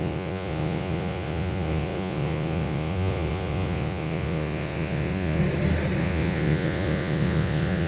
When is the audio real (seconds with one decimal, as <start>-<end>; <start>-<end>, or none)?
5.4-6.0